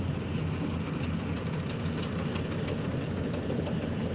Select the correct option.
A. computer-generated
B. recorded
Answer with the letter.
B